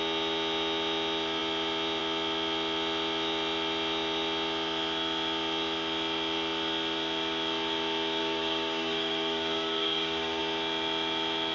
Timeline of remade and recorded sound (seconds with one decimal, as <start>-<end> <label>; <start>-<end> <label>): 0.0-8.2 recorded; 8.2-10.4 remade; 10.4-11.5 recorded